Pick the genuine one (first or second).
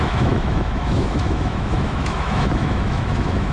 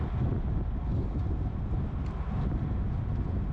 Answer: second